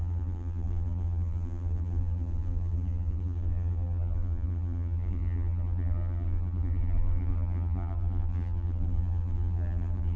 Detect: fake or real fake